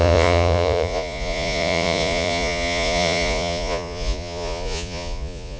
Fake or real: fake